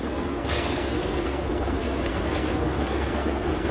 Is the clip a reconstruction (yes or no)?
yes